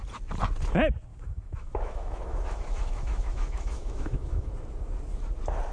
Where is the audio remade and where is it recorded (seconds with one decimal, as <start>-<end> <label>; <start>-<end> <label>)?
0.0-1.1 recorded; 1.1-4.5 remade; 4.5-5.7 recorded